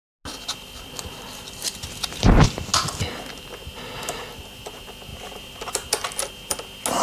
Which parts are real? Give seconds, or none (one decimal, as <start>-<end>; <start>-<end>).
0.0-7.0